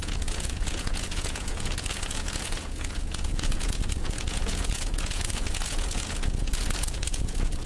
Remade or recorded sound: remade